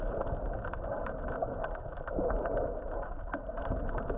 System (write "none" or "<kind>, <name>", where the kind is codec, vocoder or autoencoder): none